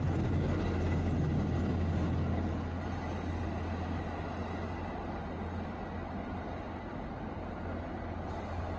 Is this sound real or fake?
real